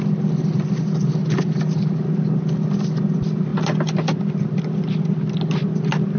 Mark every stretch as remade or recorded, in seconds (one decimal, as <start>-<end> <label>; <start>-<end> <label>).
0.0-6.2 recorded